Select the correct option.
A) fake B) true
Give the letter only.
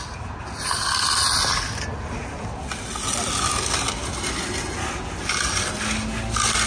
B